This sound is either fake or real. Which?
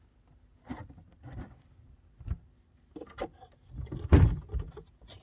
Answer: real